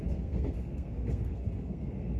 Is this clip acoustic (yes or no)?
no